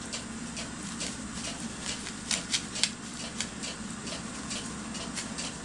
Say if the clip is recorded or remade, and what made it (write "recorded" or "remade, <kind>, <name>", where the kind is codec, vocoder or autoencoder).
recorded